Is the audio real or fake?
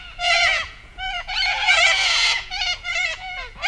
fake